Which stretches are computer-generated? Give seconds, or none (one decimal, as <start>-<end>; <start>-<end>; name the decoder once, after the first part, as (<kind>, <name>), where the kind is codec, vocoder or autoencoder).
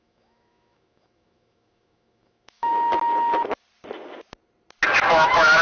0.0-2.7 (autoencoder, DAC-VAE); 5.1-5.6